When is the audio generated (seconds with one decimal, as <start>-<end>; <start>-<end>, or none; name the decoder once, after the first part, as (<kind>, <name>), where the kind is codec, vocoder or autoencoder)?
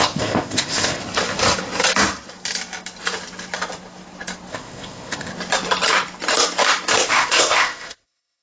0.0-1.0 (codec, ZipCodec); 4.5-5.3; 7.1-8.4